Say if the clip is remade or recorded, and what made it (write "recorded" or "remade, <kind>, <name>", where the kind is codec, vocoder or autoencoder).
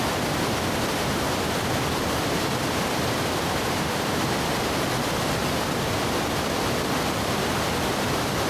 remade, vocoder, BigVGAN v2